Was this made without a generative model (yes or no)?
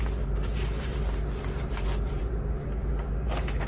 no